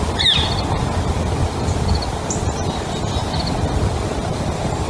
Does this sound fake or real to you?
real